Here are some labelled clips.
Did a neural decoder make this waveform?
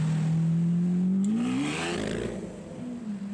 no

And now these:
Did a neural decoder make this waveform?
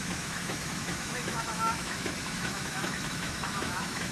yes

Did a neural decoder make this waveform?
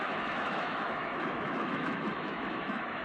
yes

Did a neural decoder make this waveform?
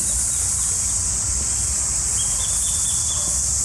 no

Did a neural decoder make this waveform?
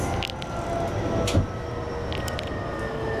no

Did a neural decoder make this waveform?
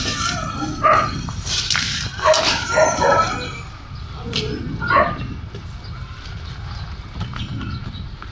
no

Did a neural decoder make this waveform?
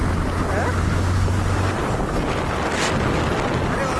no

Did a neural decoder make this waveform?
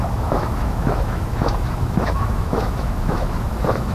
yes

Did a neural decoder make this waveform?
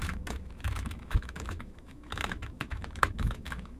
yes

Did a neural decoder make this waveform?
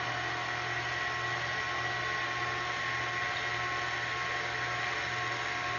no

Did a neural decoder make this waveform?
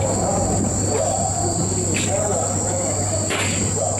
no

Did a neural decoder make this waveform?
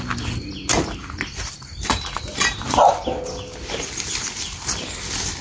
no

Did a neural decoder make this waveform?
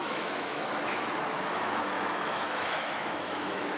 yes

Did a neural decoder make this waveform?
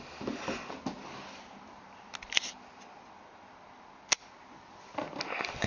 no